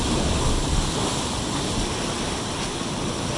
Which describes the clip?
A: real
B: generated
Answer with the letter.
A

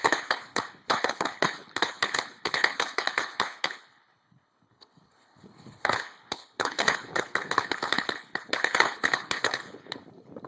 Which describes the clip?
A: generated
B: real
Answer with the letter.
A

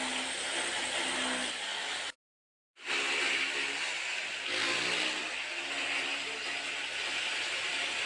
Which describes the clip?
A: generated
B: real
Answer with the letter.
B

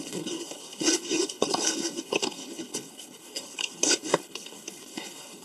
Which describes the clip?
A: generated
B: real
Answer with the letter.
A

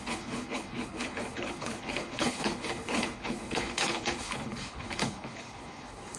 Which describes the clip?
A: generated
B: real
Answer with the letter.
A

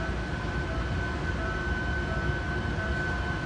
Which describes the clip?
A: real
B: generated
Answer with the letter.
A